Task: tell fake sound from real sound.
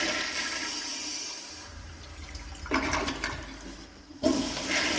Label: real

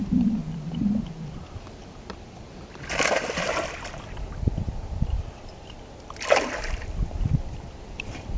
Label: fake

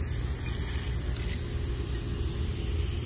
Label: real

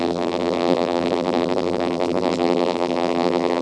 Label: fake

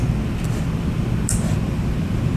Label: fake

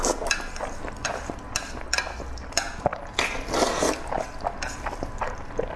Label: real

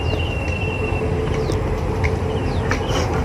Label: fake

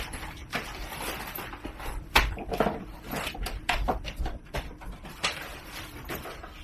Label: real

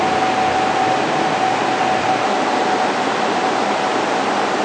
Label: real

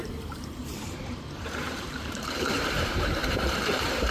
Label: fake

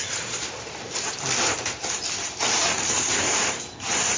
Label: fake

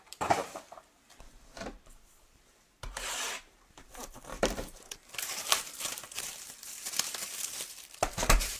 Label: fake